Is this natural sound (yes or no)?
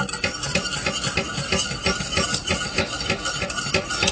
yes